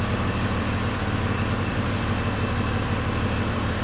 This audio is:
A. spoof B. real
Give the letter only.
A